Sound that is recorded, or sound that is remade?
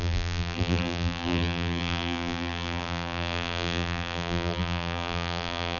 remade